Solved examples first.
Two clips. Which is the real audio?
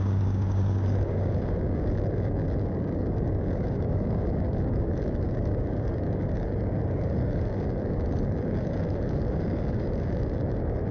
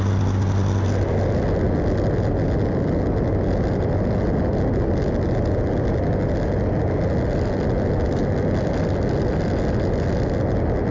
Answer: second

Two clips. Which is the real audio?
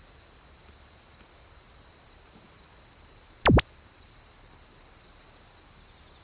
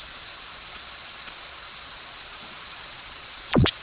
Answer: first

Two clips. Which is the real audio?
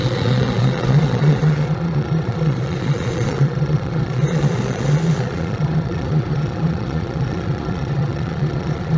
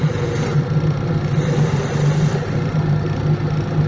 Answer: second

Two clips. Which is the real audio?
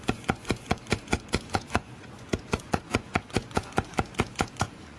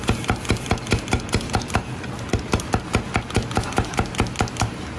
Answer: second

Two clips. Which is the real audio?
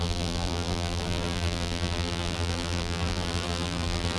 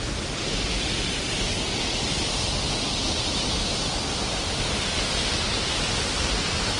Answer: second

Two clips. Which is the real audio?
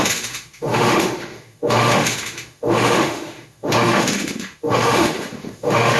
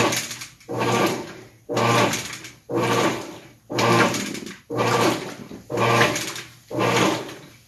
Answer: second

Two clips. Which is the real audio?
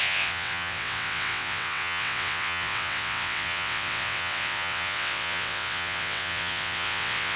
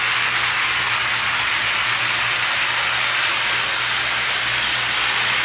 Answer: second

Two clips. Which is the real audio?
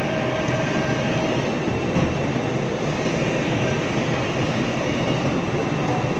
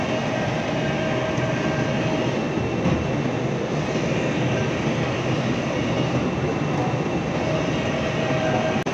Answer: second